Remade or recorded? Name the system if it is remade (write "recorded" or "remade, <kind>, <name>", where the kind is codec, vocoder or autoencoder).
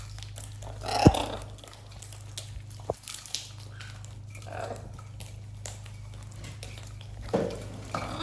recorded